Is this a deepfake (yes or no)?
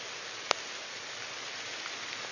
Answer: no